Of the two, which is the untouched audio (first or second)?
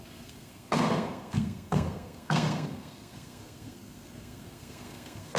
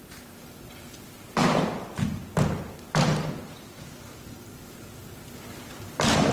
second